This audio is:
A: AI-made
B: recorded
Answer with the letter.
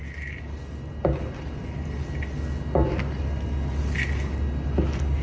B